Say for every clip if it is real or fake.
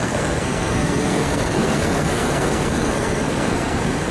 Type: fake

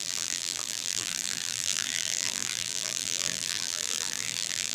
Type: fake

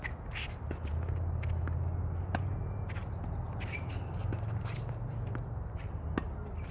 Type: real